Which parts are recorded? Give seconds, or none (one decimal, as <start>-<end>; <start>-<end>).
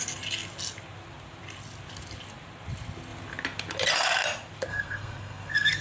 0.0-4.7